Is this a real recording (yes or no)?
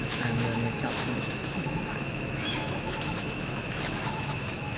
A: no